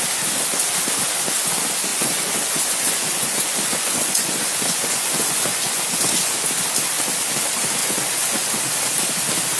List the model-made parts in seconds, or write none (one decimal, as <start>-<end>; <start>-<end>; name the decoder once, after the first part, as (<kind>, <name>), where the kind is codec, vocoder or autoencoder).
1.9-6.4 (vocoder, Vocos); 7.8-8.5